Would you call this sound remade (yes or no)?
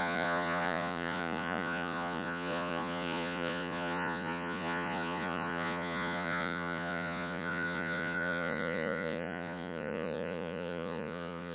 yes